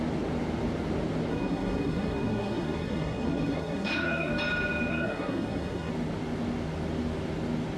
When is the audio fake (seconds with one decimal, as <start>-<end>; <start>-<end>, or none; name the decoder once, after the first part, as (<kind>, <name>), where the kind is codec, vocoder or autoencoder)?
1.3-4.3 (codec, SNAC); 4.9-5.9